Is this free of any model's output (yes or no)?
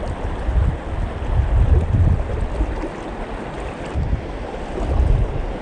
yes